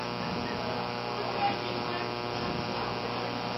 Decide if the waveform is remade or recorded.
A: recorded